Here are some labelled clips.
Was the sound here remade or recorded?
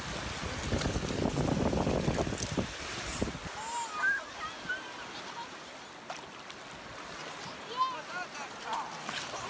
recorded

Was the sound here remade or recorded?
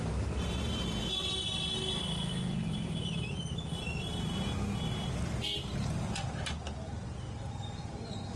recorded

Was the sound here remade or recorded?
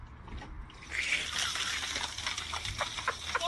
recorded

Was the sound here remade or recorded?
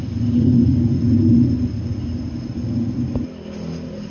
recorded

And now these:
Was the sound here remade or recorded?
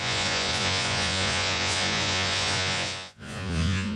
remade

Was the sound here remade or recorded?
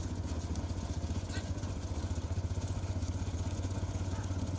remade